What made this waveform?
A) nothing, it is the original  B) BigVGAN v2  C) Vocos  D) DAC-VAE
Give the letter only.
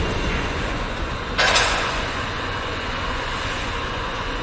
C